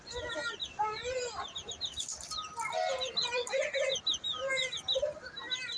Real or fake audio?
real